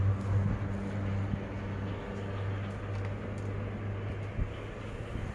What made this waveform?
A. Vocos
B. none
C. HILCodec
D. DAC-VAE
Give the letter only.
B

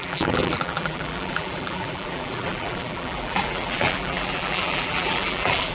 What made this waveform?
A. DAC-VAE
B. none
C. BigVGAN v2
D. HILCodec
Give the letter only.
C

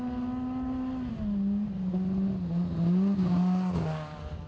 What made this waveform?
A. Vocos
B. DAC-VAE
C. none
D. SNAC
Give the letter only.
C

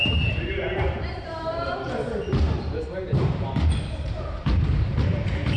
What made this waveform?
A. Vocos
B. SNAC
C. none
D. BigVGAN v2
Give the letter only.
D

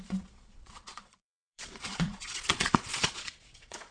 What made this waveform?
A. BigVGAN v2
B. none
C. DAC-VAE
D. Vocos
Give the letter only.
D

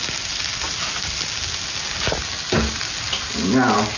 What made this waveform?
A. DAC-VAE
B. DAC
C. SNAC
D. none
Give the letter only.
D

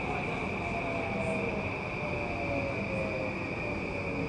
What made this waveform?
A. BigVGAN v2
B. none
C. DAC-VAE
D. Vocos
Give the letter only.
B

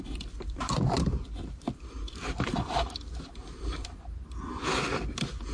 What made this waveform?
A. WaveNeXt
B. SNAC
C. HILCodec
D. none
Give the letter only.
D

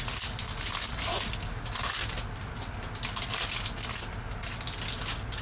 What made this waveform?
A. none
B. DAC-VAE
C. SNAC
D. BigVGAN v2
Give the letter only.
A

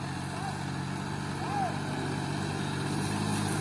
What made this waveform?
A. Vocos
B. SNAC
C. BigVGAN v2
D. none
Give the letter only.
D